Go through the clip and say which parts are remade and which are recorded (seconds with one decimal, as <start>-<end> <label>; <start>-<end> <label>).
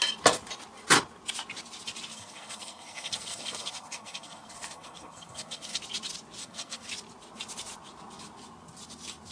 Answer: 0.0-2.1 recorded; 2.1-5.8 remade; 5.8-6.4 recorded; 6.4-6.9 remade; 6.9-9.3 recorded